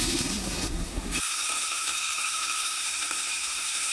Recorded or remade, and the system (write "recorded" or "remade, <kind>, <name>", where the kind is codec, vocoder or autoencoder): remade, codec, SNAC